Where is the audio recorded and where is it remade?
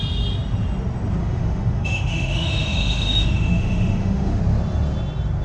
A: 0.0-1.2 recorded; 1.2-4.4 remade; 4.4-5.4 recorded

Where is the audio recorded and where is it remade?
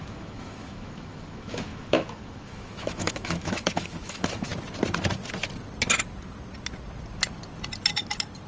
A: 0.0-4.5 remade; 4.5-8.5 recorded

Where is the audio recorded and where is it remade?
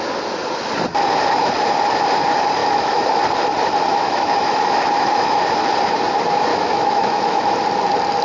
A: 0.0-2.6 recorded; 2.6-3.2 remade; 3.2-3.9 recorded; 3.9-5.4 remade; 5.4-6.5 recorded; 6.5-7.4 remade; 7.4-8.2 recorded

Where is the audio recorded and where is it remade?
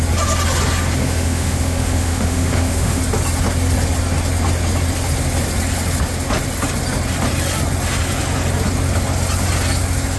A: 0.0-1.0 recorded; 1.0-3.0 remade; 3.0-10.2 recorded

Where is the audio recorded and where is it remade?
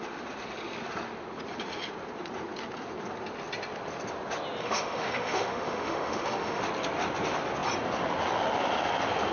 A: 0.0-4.6 recorded; 4.6-6.6 remade; 6.6-9.3 recorded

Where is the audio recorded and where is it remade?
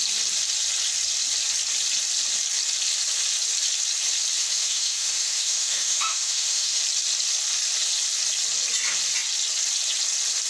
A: 0.0-4.4 recorded; 4.4-6.8 remade; 6.8-10.5 recorded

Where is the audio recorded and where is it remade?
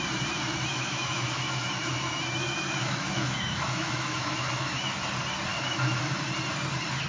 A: 0.0-0.7 recorded; 0.7-5.0 remade; 5.0-5.5 recorded; 5.5-6.2 remade; 6.2-7.1 recorded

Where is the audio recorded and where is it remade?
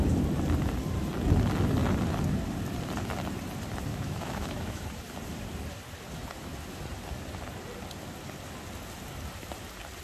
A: 0.0-3.9 recorded; 3.9-4.8 remade; 4.8-10.0 recorded